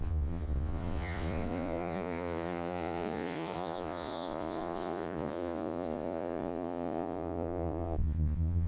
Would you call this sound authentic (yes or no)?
no